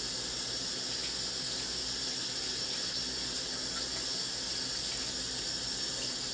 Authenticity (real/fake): real